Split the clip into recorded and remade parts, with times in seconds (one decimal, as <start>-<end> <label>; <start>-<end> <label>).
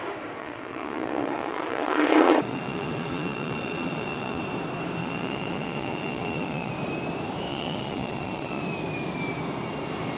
0.0-0.4 recorded; 0.4-4.4 remade; 4.4-5.0 recorded; 5.0-6.7 remade; 6.7-7.5 recorded; 7.5-8.6 remade; 8.6-10.2 recorded